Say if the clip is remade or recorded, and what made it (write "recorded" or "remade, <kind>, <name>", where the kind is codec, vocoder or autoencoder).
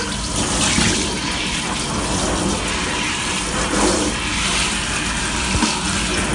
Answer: recorded